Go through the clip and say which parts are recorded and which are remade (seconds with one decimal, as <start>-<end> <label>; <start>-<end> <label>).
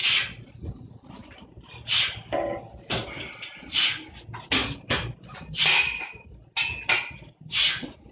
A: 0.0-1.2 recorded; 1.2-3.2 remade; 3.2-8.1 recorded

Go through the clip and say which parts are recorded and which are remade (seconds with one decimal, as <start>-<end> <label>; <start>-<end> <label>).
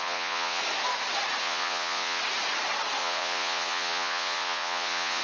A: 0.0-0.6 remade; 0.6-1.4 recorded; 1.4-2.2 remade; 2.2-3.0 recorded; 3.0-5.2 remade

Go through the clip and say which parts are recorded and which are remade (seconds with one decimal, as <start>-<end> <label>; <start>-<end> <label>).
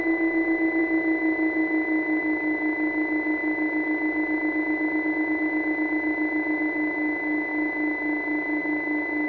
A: 0.0-9.3 recorded